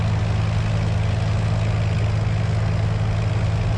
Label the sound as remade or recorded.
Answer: recorded